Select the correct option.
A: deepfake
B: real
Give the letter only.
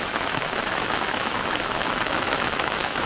A